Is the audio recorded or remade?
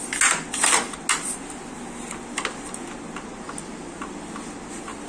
recorded